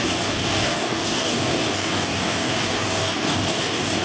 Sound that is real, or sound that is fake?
fake